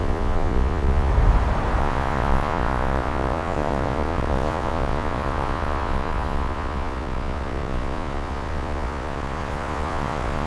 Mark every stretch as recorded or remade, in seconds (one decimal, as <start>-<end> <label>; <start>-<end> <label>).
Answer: 0.0-1.1 remade; 1.1-1.8 recorded; 1.8-10.5 remade